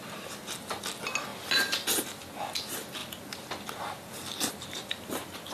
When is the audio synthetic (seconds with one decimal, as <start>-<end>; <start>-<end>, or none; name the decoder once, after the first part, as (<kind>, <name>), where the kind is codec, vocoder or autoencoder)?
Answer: none